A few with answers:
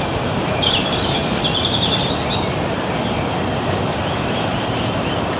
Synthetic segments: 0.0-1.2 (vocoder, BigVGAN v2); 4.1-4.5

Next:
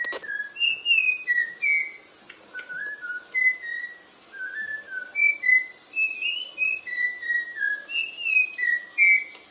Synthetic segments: 4.7-5.4 (vocoder, BigVGAN v2)

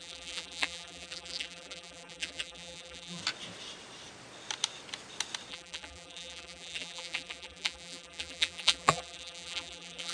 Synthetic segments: 0.0-3.2 (vocoder, BigVGAN v2); 5.5-10.1

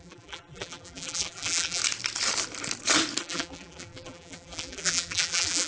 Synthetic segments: 0.0-1.8 (vocoder, BigVGAN v2); 3.2-5.7

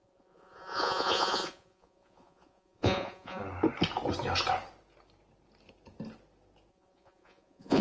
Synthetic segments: 0.0-3.4 (vocoder, Vocos); 6.7-7.8